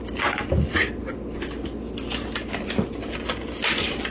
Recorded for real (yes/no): yes